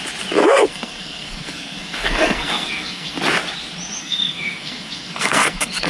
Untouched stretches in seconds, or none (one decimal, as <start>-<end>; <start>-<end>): 0.0-0.4; 3.2-4.0